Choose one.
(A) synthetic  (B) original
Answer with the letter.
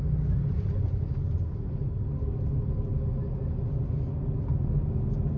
B